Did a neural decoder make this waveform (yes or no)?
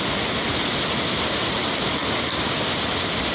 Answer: no